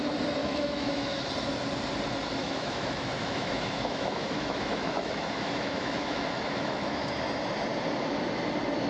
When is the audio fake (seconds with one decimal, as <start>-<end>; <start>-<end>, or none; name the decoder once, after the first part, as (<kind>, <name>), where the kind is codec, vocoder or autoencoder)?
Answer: 0.4-1.2 (autoencoder, DAC-VAE); 2.4-7.1